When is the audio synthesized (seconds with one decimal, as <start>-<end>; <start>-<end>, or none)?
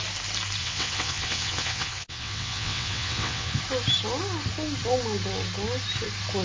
0.6-3.6